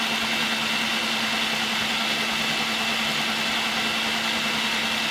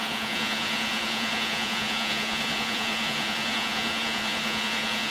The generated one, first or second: second